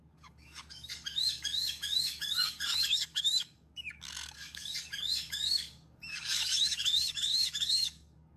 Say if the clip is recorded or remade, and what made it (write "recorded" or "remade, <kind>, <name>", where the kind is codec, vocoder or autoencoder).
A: remade, codec, DAC